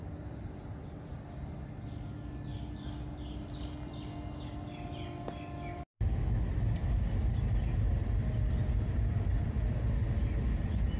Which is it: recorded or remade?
recorded